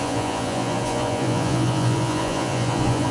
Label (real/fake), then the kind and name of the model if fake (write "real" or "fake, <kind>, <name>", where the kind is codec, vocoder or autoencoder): fake, vocoder, Vocos